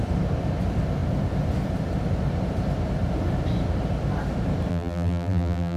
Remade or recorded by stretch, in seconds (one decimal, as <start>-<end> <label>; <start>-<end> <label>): 0.0-4.7 recorded; 4.7-5.8 remade